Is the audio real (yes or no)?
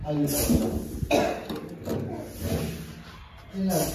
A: yes